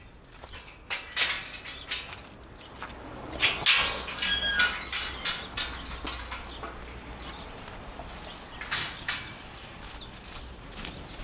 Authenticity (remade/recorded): recorded